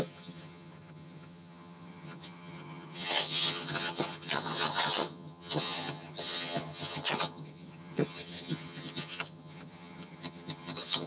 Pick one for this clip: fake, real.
fake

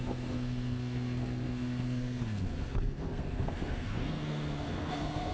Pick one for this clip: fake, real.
fake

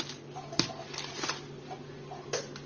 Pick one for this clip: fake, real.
real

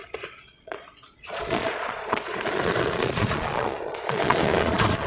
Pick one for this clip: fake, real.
fake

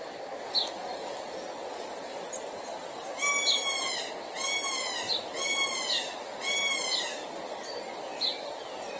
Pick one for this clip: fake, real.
real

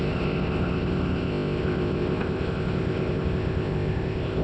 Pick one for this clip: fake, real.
fake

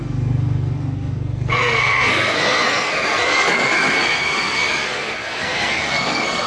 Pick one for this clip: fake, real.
fake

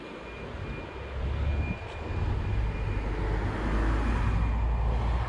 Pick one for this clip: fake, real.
real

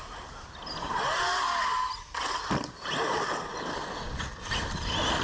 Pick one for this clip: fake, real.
real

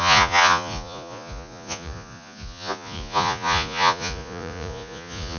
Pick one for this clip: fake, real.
fake